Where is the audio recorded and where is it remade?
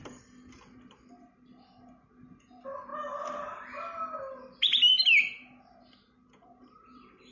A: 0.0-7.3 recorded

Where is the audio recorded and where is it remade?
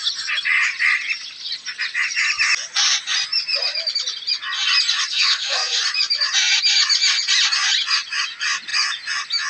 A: 0.0-5.1 recorded; 5.1-5.8 remade; 5.8-9.5 recorded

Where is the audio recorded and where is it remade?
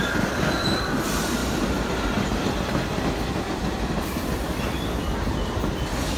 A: 0.0-1.4 remade; 1.4-3.4 recorded; 3.4-6.2 remade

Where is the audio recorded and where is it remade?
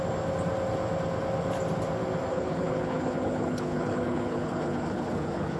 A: 0.0-2.3 recorded; 2.3-5.6 remade